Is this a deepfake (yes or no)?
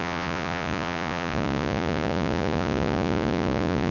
yes